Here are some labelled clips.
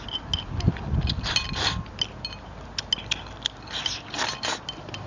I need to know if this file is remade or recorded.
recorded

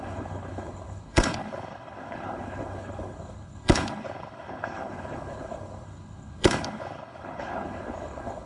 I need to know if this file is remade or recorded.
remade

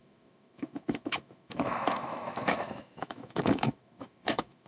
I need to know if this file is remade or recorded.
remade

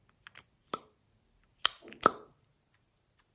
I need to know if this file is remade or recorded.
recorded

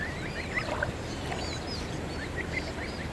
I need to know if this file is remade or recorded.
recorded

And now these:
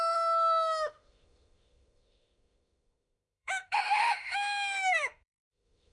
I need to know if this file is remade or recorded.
remade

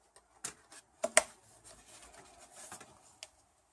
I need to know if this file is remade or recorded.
recorded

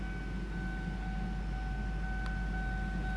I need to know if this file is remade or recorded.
recorded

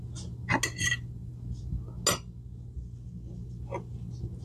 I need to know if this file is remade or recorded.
recorded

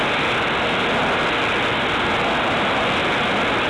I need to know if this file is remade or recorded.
recorded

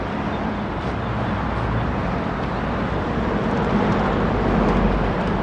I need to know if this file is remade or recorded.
recorded